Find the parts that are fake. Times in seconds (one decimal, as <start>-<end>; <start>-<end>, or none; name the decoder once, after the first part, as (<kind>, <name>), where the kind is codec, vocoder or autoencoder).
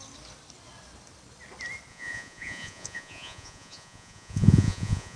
1.9-5.2 (vocoder, Vocos)